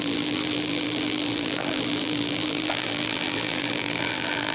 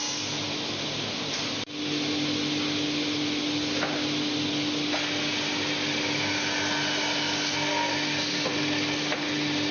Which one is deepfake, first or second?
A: first